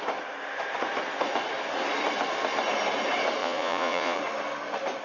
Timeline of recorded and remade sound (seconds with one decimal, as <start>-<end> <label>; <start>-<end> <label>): 0.0-3.4 recorded; 3.4-4.2 remade; 4.2-5.0 recorded

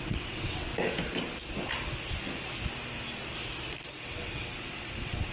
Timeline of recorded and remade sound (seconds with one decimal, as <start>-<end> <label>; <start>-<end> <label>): 0.0-0.7 remade; 0.7-3.9 recorded; 3.9-5.3 remade

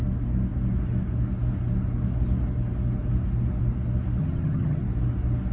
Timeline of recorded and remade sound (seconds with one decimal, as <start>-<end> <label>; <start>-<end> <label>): 0.0-4.2 recorded; 4.2-4.8 remade; 4.8-5.5 recorded